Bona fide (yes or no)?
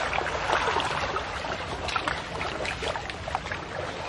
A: yes